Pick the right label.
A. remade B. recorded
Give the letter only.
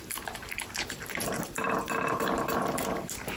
A